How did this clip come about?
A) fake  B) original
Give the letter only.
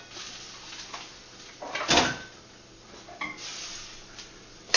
B